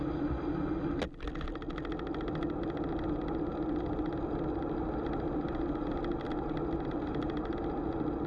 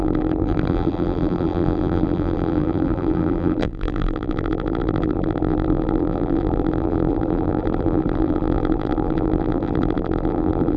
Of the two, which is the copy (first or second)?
second